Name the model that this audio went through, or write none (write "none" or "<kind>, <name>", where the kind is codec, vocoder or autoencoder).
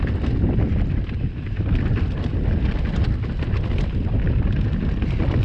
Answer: none